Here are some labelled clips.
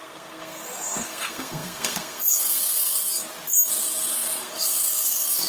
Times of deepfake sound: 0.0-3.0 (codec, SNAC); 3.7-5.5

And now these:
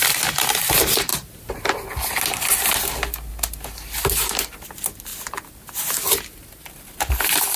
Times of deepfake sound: none

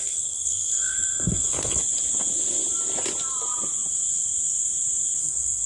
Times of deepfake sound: 0.0-1.8 (codec, SNAC); 5.2-5.7

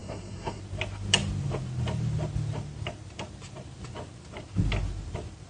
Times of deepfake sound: 0.0-0.6 (codec, SNAC)

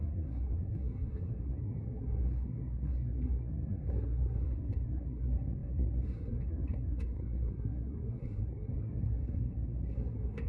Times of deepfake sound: 0.0-10.5 (codec, SNAC)

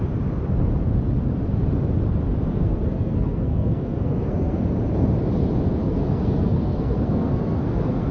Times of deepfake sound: 2.5-4.6 (codec, SNAC); 5.8-8.1

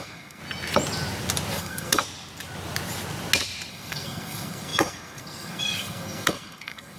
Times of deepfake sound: 0.0-0.4 (codec, SNAC); 1.6-2.0; 3.7-7.0

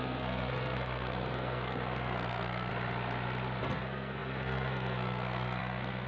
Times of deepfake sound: 0.0-2.7 (codec, SNAC); 3.6-6.1